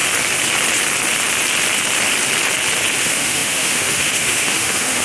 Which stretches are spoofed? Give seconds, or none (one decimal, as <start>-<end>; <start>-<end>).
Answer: 3.0-5.0